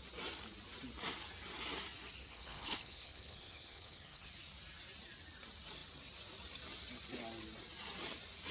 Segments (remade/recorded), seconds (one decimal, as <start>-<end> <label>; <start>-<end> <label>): 0.0-2.2 recorded; 2.2-4.3 remade; 4.3-8.5 recorded